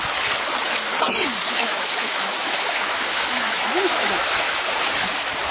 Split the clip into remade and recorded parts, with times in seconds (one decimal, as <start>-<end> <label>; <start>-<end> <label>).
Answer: 0.0-1.6 recorded; 1.6-4.9 remade; 4.9-5.5 recorded